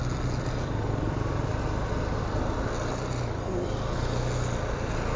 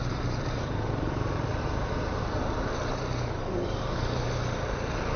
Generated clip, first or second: second